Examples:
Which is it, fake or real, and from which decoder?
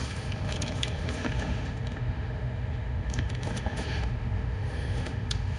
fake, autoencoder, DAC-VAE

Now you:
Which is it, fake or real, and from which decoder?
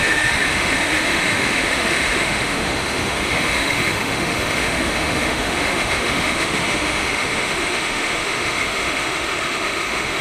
fake, autoencoder, DAC-VAE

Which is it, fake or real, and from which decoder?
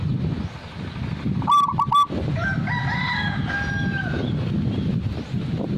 real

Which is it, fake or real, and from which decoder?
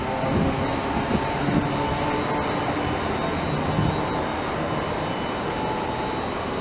real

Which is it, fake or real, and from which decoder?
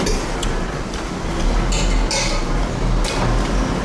real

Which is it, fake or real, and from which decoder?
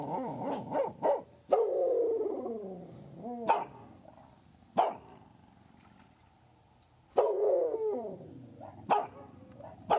real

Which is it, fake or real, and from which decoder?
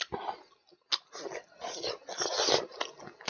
real